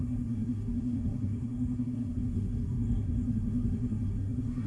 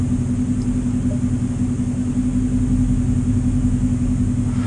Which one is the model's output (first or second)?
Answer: first